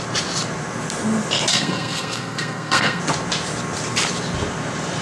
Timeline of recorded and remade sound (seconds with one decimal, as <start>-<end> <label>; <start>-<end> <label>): 0.0-1.5 recorded; 1.5-3.0 remade; 3.0-5.0 recorded